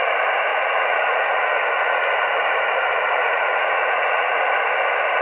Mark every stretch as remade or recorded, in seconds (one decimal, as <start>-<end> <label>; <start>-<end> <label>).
0.0-0.5 recorded; 0.5-2.1 remade; 2.1-3.2 recorded; 3.2-4.4 remade; 4.4-5.2 recorded